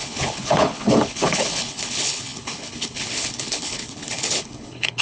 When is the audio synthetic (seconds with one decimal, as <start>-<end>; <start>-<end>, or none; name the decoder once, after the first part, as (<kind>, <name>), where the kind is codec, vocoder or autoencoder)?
0.0-5.0 (codec, HILCodec)